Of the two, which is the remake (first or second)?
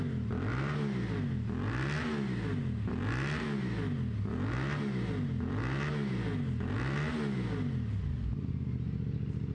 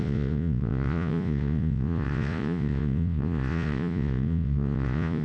second